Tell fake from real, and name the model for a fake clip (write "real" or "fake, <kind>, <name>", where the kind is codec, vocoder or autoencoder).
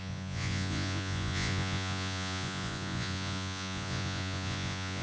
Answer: fake, vocoder, Vocos